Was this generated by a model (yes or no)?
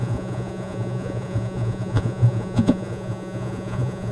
yes